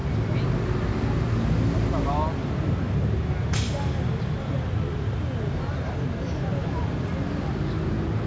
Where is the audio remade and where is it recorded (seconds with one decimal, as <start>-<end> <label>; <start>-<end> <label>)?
0.0-8.3 recorded